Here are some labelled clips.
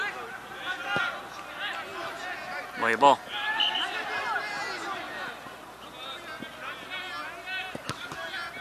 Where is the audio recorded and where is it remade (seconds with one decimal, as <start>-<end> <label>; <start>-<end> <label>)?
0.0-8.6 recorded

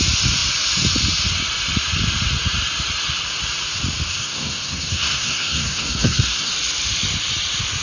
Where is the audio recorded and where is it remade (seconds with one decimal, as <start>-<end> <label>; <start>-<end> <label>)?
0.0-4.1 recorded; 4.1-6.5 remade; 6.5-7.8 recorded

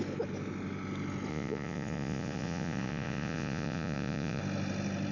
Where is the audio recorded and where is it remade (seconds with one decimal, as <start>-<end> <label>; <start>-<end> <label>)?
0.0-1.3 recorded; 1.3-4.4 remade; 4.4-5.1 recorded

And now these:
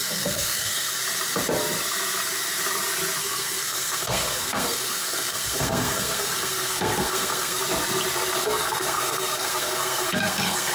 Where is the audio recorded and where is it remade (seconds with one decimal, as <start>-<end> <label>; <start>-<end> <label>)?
0.0-1.0 remade; 1.0-3.2 recorded; 3.2-7.6 remade; 7.6-8.4 recorded; 8.4-10.7 remade